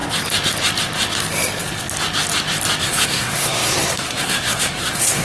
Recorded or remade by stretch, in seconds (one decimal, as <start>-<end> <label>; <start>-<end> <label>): 0.0-2.8 recorded; 2.8-5.2 remade